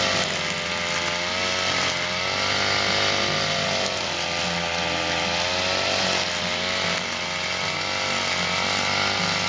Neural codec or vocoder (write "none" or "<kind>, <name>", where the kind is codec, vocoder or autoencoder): none